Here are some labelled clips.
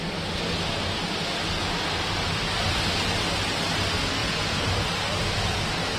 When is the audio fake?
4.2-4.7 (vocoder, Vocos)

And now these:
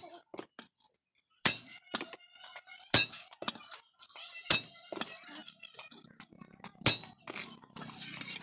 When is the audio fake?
none

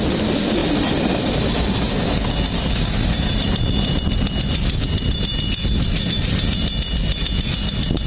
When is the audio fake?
none

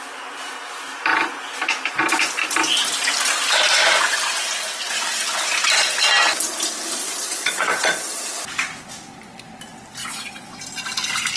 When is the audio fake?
7.0-8.2 (vocoder, Vocos); 10.0-10.6

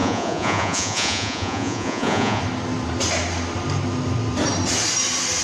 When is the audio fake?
0.0-2.4 (vocoder, Vocos)

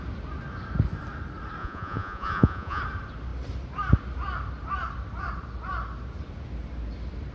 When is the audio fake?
1.6-2.8 (vocoder, Vocos)